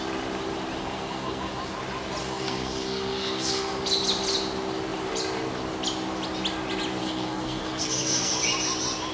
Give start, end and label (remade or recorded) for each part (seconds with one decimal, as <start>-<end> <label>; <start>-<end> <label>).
0.0-0.8 recorded; 0.8-1.5 remade; 1.5-2.2 recorded; 2.2-3.7 remade; 3.7-7.0 recorded; 7.0-8.3 remade; 8.3-9.1 recorded